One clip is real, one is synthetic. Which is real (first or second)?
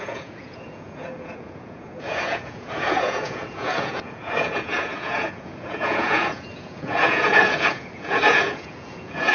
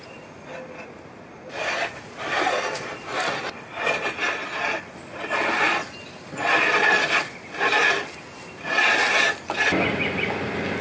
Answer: second